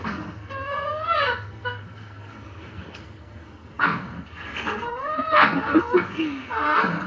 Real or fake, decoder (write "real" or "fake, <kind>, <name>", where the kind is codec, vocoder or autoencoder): fake, codec, SNAC